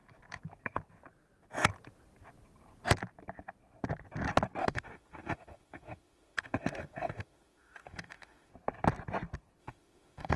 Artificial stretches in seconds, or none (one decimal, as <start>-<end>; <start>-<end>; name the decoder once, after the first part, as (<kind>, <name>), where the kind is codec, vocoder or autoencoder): 4.6-8.5 (autoencoder, DAC-VAE); 9.6-10.4